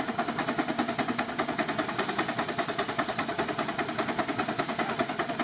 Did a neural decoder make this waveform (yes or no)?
no